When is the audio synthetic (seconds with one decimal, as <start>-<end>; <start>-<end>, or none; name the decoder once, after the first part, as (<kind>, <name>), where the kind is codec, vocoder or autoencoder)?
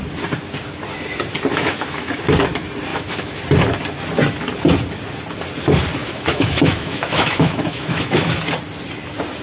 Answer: 1.5-2.2 (autoencoder, DAC-VAE); 2.9-3.4; 6.0-8.4